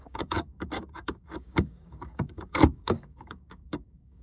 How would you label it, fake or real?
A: fake